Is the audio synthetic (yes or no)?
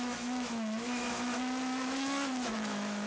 yes